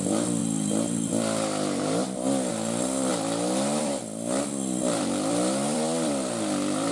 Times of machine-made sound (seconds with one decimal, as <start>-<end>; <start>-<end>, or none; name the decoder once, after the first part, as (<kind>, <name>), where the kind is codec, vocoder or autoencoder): 0.0-3.1 (vocoder, BigVGAN v2); 3.8-6.9